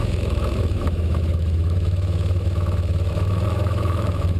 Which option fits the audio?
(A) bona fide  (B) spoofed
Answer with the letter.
B